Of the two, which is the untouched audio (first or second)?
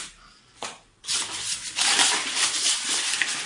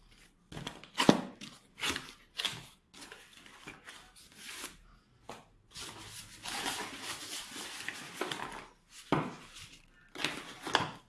second